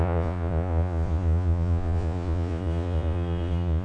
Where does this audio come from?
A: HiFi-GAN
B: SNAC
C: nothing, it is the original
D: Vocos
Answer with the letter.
D